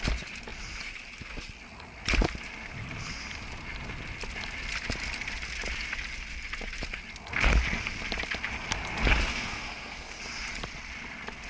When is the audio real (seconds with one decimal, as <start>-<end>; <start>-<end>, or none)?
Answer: 0.0-9.3; 10.2-11.5